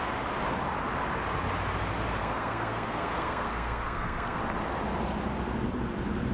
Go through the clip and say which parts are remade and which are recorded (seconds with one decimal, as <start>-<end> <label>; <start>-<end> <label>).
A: 0.0-2.2 recorded; 2.2-4.4 remade; 4.4-6.3 recorded